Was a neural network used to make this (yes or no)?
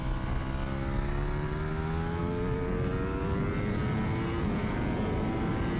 no